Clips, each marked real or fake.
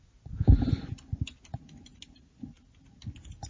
real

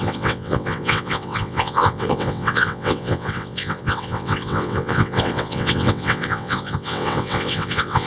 fake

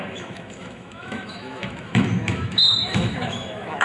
fake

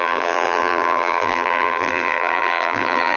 fake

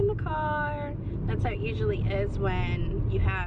real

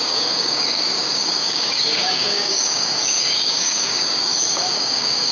fake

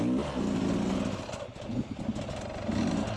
real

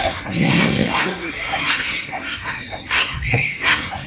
fake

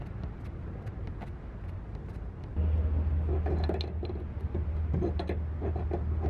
real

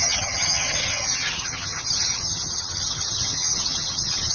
fake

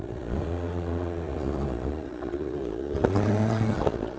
fake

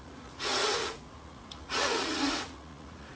fake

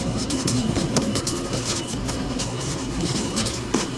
fake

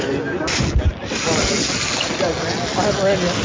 real